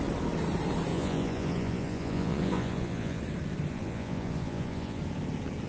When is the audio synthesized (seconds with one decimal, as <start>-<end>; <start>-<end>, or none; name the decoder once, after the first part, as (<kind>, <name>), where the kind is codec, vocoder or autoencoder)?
0.9-3.2 (vocoder, Vocos); 3.7-5.0